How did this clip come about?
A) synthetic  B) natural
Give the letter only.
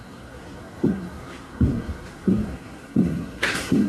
A